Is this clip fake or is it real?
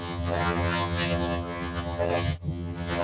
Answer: fake